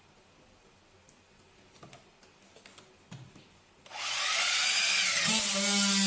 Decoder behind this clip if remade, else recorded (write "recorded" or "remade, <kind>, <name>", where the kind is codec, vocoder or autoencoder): recorded